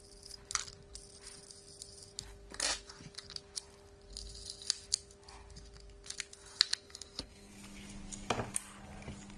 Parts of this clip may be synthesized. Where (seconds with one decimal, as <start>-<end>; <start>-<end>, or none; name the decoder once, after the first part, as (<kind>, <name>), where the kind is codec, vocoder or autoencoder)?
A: 6.7-7.5 (codec, SNAC)